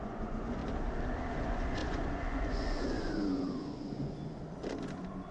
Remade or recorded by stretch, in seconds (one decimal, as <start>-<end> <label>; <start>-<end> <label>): 0.0-0.6 remade; 0.6-1.4 recorded; 1.4-4.4 remade; 4.4-5.3 recorded